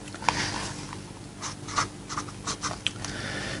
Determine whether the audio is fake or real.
real